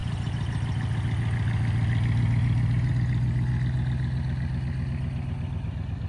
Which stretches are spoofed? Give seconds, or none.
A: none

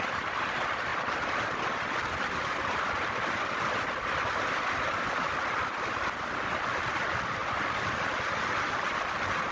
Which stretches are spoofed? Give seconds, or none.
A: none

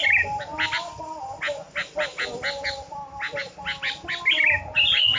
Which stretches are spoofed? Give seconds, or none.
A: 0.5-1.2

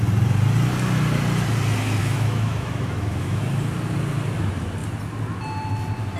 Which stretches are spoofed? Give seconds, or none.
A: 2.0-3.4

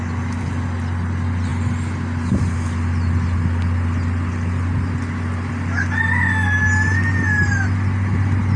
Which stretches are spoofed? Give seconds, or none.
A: none